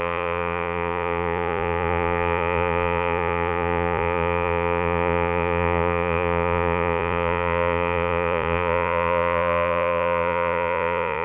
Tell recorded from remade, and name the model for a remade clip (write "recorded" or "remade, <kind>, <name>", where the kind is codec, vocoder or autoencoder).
remade, vocoder, Vocos